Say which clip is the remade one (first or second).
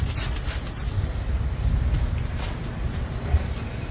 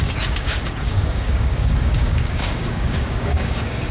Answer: second